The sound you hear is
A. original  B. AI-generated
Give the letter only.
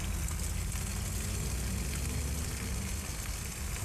A